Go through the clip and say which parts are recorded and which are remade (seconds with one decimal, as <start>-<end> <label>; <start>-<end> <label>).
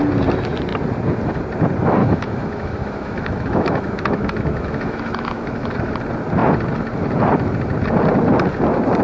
0.0-2.0 recorded; 2.0-5.9 remade; 5.9-9.0 recorded